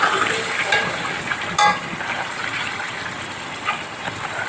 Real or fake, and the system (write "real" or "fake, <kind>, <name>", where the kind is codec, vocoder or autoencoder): real